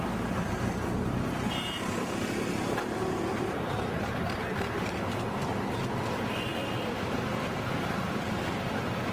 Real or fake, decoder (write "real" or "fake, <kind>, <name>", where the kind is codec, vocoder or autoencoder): fake, vocoder, BigVGAN v2